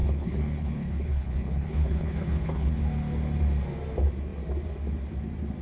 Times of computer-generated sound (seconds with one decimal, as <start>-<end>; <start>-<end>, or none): 0.0-2.8